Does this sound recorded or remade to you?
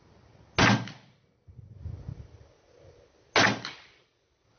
recorded